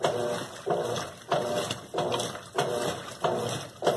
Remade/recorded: recorded